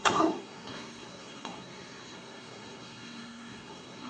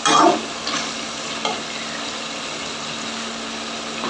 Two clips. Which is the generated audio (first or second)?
first